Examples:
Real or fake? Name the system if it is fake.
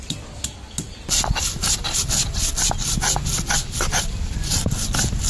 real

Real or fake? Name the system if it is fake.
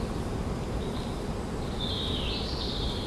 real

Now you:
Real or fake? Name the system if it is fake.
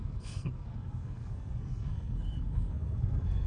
fake, codec, SNAC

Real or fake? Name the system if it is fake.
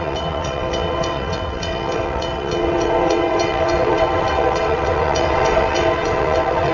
fake, vocoder, WaveNeXt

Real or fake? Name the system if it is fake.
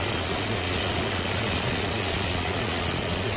fake, vocoder, Vocos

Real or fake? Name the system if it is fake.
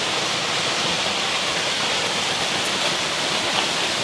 real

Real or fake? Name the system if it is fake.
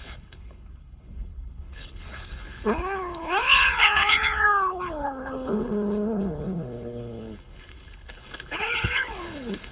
fake, codec, HILCodec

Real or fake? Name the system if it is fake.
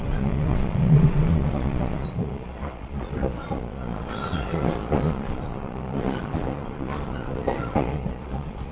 fake, vocoder, Vocos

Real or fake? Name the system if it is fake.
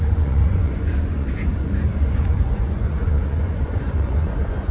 fake, vocoder, Vocos